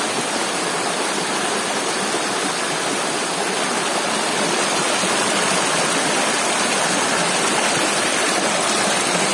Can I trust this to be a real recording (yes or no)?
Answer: yes